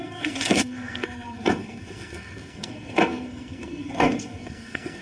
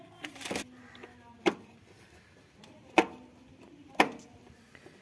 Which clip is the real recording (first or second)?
second